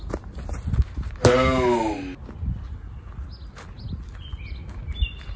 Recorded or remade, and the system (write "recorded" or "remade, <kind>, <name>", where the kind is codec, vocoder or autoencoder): recorded